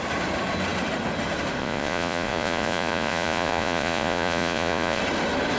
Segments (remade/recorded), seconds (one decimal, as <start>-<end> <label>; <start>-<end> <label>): 0.0-1.6 recorded; 1.6-5.0 remade; 5.0-5.6 recorded